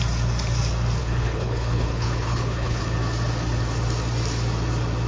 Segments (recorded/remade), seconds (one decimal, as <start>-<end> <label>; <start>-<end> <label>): 0.0-1.0 recorded; 1.0-2.8 remade; 2.8-5.1 recorded